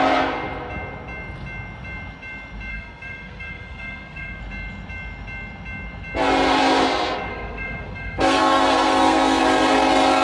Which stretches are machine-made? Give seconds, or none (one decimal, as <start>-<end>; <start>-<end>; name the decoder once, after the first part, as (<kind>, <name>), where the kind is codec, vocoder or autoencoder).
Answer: 2.7-4.4 (codec, SNAC); 7.3-9.4